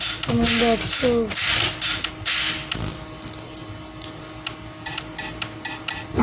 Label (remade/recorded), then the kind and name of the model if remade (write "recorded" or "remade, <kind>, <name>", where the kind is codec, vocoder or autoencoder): recorded